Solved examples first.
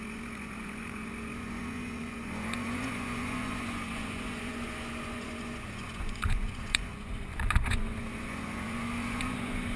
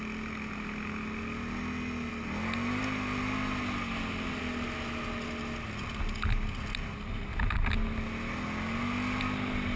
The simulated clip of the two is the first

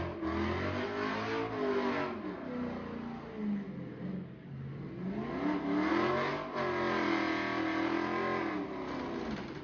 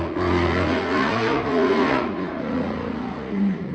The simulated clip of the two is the second